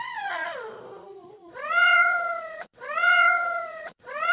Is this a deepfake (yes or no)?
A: yes